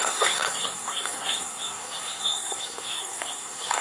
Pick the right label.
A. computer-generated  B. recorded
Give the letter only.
A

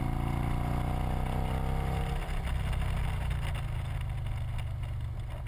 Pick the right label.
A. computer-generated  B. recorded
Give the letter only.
B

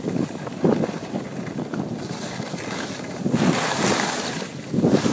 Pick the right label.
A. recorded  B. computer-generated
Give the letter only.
A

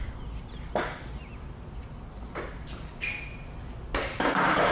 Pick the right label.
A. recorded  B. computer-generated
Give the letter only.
A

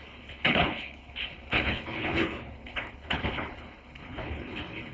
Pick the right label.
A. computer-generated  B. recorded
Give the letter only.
A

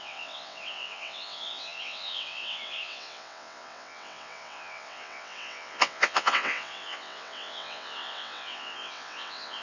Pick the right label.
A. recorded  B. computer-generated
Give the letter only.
B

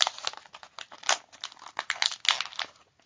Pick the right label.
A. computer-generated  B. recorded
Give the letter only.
B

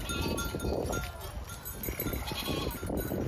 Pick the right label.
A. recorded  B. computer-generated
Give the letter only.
A